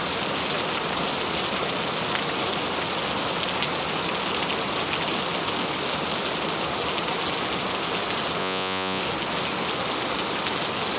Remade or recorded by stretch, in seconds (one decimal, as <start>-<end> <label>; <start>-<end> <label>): 0.0-8.4 recorded; 8.4-9.0 remade; 9.0-11.0 recorded